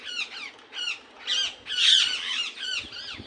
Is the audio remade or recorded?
recorded